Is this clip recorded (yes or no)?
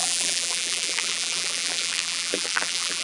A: no